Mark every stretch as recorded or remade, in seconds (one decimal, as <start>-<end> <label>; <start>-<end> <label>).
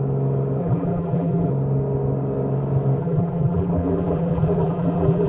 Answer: 0.0-0.6 recorded; 0.6-1.5 remade; 1.5-3.0 recorded; 3.0-5.3 remade